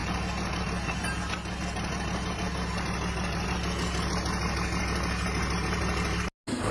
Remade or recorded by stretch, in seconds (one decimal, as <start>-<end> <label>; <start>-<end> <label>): 0.0-6.7 recorded